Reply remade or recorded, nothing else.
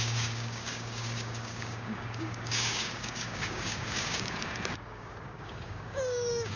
remade